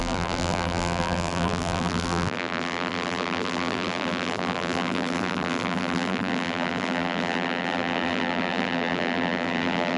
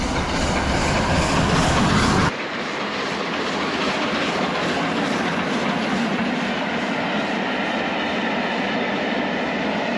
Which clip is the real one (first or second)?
second